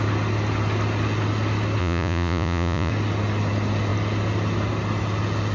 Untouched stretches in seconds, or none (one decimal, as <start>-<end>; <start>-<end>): 0.0-1.8; 2.9-5.5